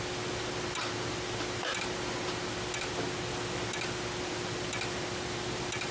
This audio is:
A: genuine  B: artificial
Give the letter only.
A